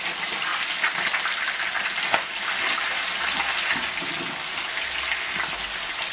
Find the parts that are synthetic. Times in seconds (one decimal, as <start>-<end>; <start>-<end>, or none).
none